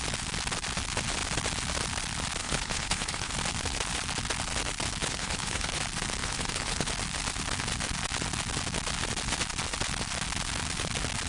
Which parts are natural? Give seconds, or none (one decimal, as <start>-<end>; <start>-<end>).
0.0-2.4; 3.3-5.0; 5.8-6.2; 6.9-11.3